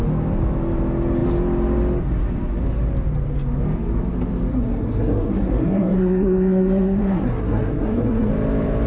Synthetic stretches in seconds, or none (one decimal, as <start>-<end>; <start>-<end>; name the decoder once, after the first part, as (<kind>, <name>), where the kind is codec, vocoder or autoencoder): 4.5-8.3 (codec, SNAC)